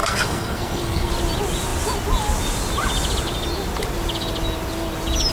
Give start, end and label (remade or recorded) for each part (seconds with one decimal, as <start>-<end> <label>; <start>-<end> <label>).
0.0-1.1 remade; 1.1-5.3 recorded